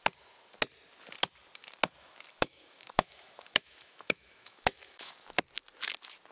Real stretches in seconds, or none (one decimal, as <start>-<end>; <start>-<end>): 0.0-2.0; 5.4-6.3